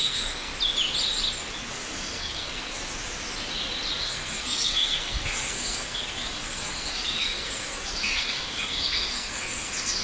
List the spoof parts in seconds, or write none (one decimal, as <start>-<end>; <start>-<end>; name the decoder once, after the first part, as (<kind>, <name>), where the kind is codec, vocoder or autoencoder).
0.0-0.5 (codec, SNAC); 1.7-2.8; 4.0-10.0